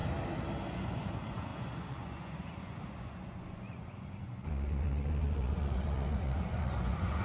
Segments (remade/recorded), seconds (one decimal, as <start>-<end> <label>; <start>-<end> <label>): 0.0-0.7 recorded; 0.7-7.2 remade